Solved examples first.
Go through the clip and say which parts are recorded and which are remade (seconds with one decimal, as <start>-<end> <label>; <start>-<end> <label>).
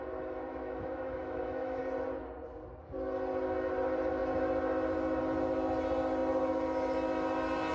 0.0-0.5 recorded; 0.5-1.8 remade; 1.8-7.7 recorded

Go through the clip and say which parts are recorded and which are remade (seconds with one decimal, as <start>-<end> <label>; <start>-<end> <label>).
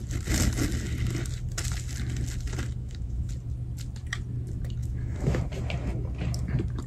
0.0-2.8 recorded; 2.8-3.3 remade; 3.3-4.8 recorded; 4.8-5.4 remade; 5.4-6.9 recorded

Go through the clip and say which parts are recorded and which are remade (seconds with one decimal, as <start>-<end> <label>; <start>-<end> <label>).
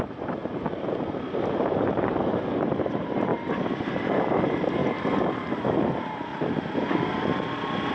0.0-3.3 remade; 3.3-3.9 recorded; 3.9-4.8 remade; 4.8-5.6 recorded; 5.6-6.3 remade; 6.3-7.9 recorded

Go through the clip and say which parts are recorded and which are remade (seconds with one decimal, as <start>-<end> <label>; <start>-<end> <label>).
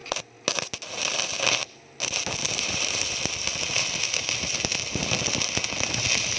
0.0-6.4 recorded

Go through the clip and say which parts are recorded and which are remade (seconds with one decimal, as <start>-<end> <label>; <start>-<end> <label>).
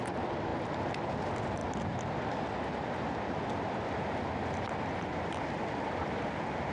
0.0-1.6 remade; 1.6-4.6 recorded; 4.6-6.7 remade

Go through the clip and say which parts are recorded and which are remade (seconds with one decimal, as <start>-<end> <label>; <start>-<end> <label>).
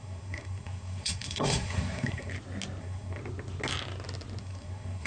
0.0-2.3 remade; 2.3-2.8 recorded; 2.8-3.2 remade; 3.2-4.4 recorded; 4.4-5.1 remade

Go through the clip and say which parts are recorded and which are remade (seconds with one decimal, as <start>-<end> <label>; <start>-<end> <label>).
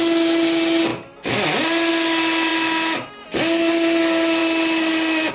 0.0-5.3 recorded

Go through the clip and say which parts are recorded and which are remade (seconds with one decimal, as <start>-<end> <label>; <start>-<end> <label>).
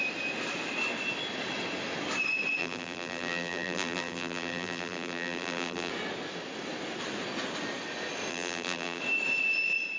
0.0-2.6 recorded; 2.6-5.9 remade; 5.9-8.3 recorded; 8.3-9.0 remade; 9.0-10.0 recorded